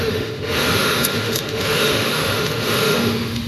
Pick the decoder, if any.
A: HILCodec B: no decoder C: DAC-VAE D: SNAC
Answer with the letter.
C